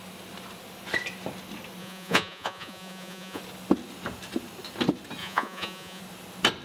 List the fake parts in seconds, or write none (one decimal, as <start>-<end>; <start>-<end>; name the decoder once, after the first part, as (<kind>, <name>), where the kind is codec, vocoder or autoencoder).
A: 1.8-3.4 (vocoder, Vocos); 5.2-6.0